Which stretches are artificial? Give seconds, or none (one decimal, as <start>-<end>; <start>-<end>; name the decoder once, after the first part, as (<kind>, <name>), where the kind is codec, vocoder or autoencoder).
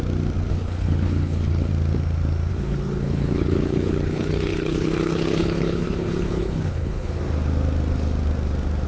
0.5-1.7 (codec, HILCodec); 2.5-7.2